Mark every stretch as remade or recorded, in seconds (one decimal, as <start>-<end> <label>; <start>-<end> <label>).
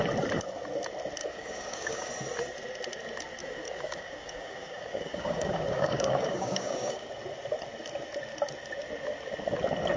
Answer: 0.0-1.2 recorded; 1.2-2.1 remade; 2.1-3.4 recorded; 3.4-7.1 remade; 7.1-10.0 recorded